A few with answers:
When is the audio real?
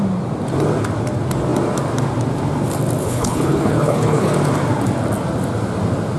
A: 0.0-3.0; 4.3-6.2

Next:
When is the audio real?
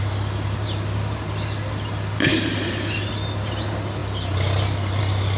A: 0.0-2.3; 3.1-5.4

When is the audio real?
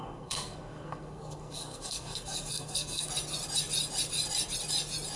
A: 3.1-5.2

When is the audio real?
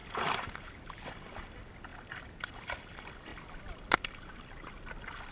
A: 1.4-5.3